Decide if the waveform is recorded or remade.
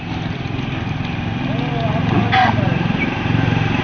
recorded